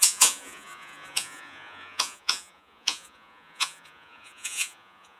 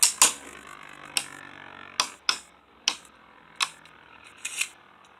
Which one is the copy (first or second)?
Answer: first